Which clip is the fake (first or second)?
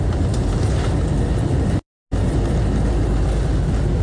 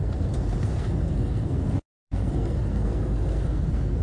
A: second